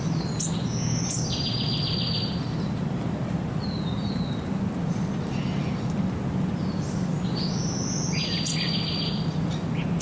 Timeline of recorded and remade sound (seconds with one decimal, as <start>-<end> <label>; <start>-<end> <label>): 0.0-10.0 recorded

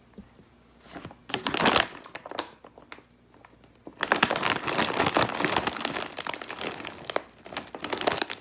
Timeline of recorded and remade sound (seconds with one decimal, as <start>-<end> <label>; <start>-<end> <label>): 0.0-8.4 recorded

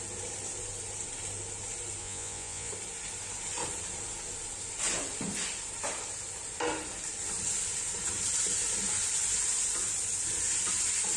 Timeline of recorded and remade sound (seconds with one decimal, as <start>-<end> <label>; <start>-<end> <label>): 0.0-2.0 recorded; 2.0-2.7 remade; 2.7-11.2 recorded

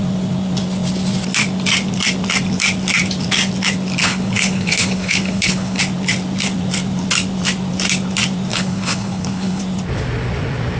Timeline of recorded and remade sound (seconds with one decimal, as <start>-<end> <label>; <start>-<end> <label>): 0.0-4.0 recorded; 4.0-5.8 remade; 5.8-8.5 recorded; 8.5-9.6 remade; 9.6-10.8 recorded

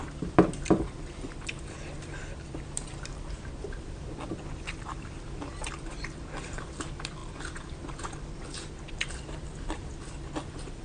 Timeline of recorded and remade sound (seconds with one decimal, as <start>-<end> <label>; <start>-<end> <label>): 0.0-7.2 remade; 7.2-8.7 recorded; 8.7-10.8 remade